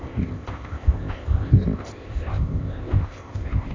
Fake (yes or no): yes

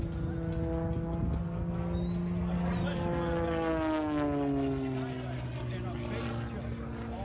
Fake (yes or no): no